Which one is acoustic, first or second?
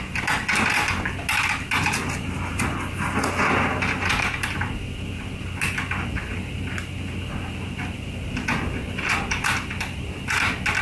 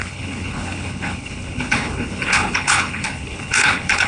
first